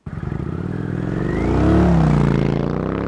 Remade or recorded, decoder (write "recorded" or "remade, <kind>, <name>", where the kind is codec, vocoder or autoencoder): recorded